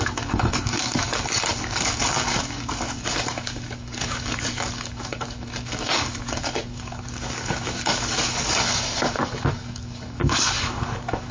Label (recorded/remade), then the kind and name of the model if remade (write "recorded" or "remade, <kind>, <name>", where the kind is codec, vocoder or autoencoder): remade, codec, DAC